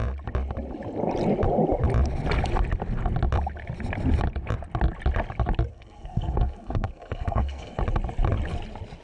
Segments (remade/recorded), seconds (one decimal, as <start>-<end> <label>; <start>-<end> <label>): 0.0-5.7 recorded; 5.7-7.8 remade; 7.8-9.0 recorded

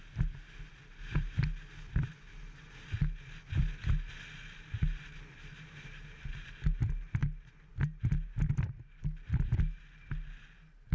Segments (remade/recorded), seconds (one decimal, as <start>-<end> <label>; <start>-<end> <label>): 0.0-10.9 recorded

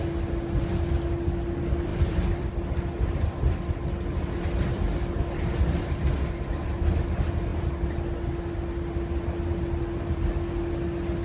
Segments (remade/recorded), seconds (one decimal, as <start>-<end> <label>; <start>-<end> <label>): 0.0-1.9 recorded; 1.9-2.5 remade; 2.5-11.2 recorded

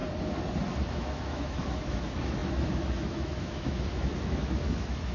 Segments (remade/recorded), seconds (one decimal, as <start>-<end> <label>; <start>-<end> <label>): 0.0-0.9 recorded; 0.9-5.1 remade

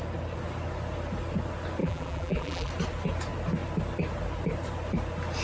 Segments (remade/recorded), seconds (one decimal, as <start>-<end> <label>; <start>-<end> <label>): 0.0-1.8 recorded; 1.8-2.7 remade; 2.7-5.4 recorded